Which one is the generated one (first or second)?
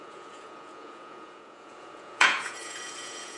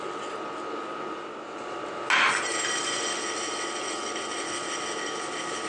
first